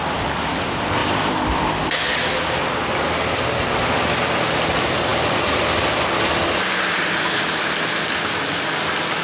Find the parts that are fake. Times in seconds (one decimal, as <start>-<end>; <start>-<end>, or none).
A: 1.0-1.6